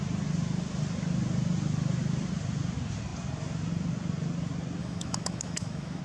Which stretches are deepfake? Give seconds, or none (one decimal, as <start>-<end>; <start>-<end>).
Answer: 4.8-6.0

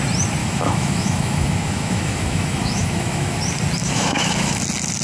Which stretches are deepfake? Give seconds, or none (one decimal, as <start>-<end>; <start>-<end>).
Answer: 0.4-3.4; 3.8-4.6